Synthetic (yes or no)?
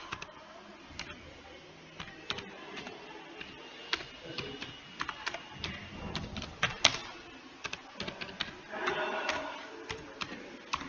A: no